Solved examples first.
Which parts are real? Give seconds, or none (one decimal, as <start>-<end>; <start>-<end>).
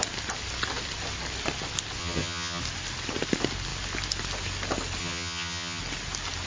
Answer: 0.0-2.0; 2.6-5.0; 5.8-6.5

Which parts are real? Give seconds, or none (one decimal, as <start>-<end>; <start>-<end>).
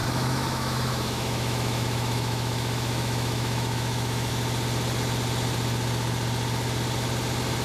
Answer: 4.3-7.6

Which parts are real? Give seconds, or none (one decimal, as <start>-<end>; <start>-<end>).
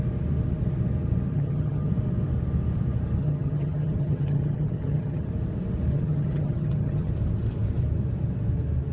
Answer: 0.0-1.3; 1.9-3.2; 5.3-5.9; 7.1-8.9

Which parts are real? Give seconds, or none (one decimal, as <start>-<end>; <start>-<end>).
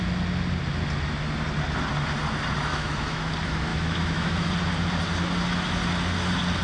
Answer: 0.0-2.7; 3.3-3.7; 4.5-6.6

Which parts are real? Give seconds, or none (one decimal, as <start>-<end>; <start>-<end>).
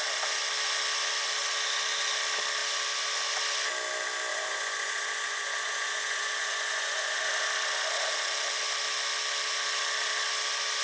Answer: 0.0-4.3; 7.2-10.8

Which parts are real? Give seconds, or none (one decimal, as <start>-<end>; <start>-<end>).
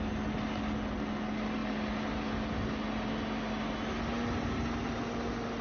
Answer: 0.0-5.6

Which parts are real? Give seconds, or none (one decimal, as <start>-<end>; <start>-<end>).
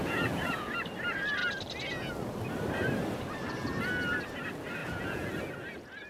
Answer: 0.7-4.8; 5.3-6.1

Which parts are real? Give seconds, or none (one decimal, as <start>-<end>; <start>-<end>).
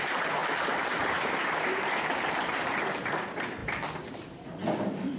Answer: 0.0-5.2